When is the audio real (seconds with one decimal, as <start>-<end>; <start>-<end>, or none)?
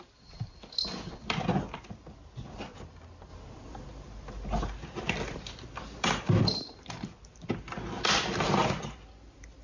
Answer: 0.0-9.6